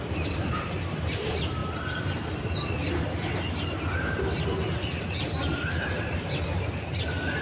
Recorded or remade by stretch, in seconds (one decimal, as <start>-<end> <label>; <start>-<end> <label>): 0.0-1.6 remade; 1.6-4.0 recorded; 4.0-4.5 remade; 4.5-5.5 recorded; 5.5-7.4 remade